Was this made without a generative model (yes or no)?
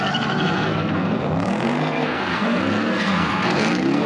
no